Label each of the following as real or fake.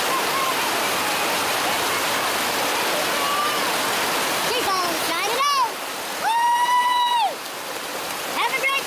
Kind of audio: real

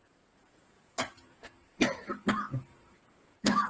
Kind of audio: fake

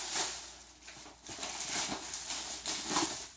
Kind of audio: real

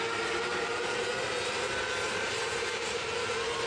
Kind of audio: fake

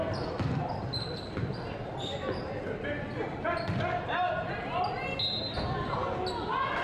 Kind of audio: real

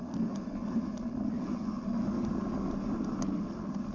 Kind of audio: real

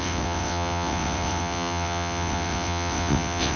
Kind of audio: fake